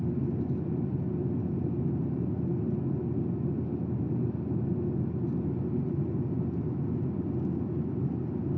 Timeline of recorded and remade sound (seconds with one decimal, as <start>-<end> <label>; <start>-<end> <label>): 0.0-8.6 recorded